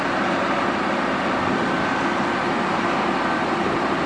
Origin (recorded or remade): recorded